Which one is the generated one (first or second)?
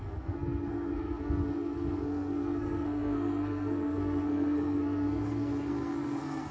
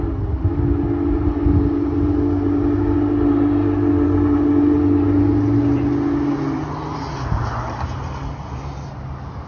first